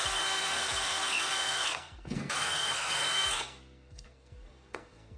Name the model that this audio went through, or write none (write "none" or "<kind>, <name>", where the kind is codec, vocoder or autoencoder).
codec, SNAC